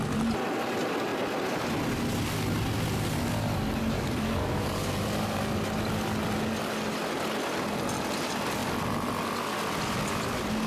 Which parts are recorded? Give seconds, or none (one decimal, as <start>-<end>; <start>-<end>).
0.0-3.8; 4.9-10.7